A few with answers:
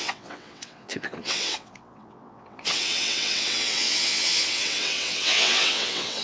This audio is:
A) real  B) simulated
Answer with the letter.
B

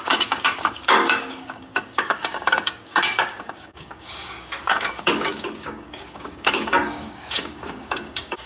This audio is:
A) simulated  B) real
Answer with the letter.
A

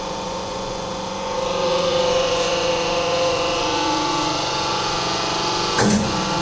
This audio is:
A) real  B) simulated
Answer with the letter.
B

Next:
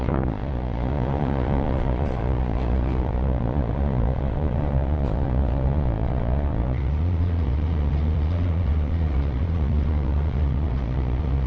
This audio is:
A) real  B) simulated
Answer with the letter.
B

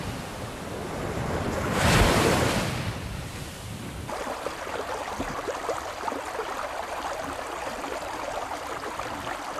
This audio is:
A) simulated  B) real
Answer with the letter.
A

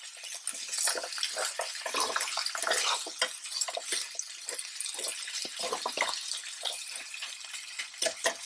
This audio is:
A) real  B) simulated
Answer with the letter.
A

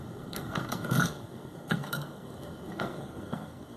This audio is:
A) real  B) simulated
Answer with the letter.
B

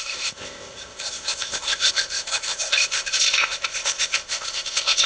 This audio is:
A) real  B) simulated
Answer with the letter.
B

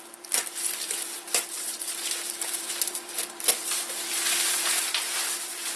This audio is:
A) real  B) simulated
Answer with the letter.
B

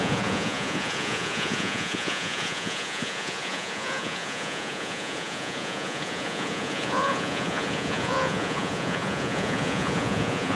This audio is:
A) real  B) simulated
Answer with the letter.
B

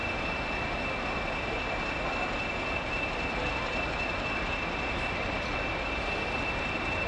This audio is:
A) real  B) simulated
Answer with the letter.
A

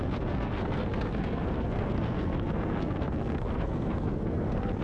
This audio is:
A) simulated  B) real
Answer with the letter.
A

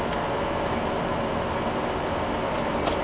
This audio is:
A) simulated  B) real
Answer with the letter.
B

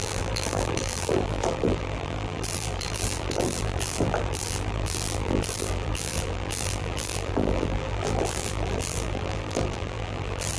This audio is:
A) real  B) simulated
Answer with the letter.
B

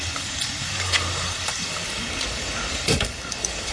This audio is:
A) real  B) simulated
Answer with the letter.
B